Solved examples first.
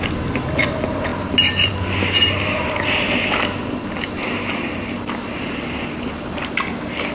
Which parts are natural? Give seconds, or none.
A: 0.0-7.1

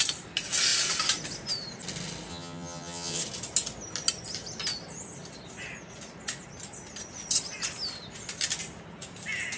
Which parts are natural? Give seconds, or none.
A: 0.0-2.3; 3.2-9.6

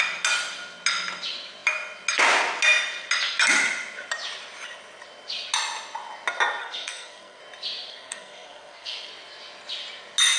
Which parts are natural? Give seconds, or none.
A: 0.0-6.6; 7.4-7.9; 9.1-10.4

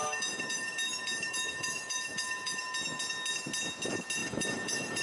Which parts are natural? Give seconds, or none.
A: 3.0-4.2